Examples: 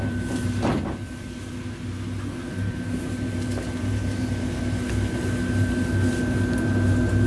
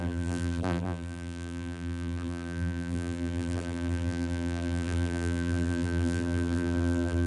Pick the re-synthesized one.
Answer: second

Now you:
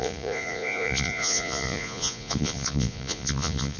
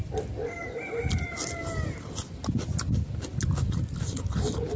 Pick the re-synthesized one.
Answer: first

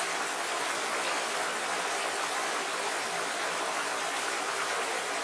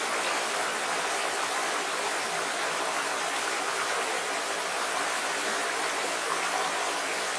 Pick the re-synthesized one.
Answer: second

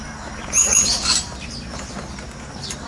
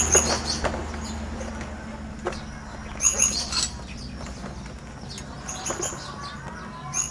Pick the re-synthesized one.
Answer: first